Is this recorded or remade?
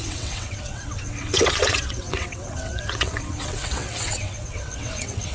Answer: remade